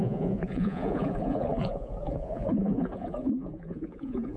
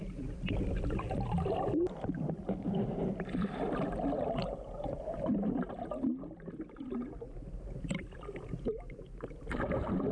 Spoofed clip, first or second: first